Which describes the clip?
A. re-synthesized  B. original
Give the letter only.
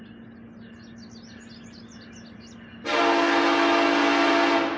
B